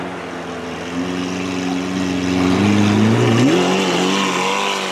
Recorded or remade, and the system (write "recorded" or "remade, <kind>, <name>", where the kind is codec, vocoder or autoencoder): recorded